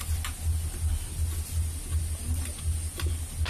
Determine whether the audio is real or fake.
real